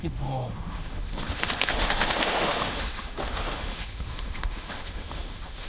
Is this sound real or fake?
fake